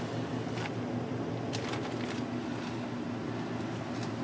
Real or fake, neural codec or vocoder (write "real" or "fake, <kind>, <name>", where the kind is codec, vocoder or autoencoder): real